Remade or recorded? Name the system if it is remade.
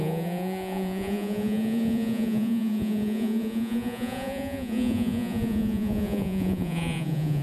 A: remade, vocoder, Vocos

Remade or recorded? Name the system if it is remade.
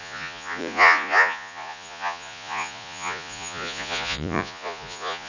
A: remade, vocoder, Vocos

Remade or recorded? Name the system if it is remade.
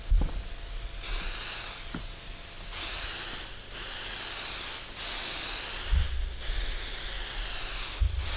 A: recorded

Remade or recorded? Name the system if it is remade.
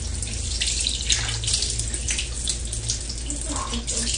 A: recorded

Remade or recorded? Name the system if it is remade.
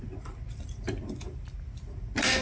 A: recorded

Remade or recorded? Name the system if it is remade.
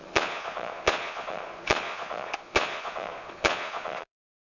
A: remade, vocoder, Vocos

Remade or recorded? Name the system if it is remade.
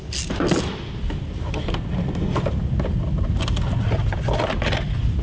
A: recorded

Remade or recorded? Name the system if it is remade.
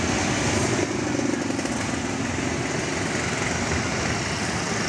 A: recorded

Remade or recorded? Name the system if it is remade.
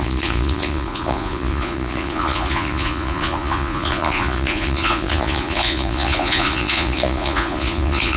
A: remade, vocoder, Vocos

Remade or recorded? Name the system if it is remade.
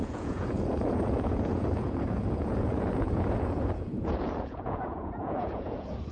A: remade, vocoder, Vocos